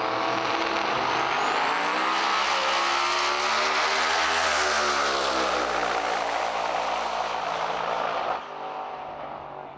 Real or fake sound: real